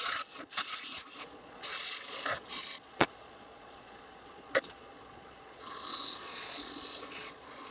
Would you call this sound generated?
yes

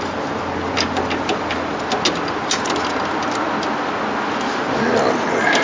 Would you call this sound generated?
no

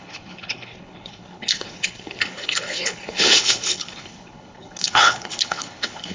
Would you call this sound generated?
yes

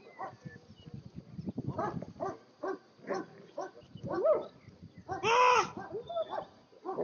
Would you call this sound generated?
no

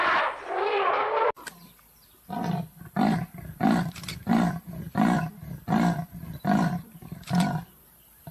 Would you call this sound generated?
yes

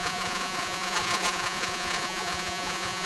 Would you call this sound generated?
yes